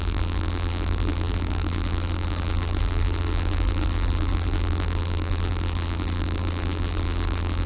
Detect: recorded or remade remade